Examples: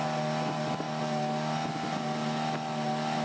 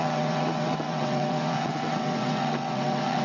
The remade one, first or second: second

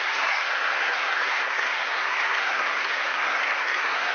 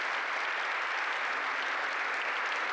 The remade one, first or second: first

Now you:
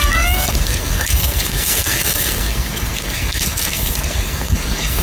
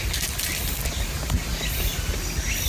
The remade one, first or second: first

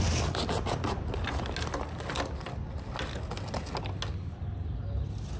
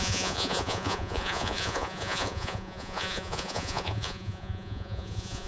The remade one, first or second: second